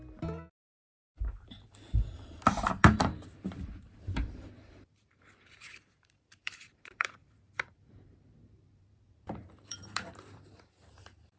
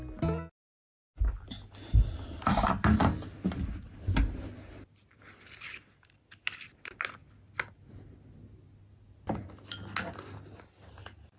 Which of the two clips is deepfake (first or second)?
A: first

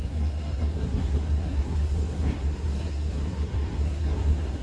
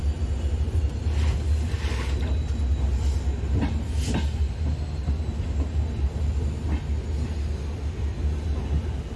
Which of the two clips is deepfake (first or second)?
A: first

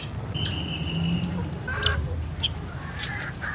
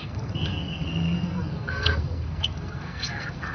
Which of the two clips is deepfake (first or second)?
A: second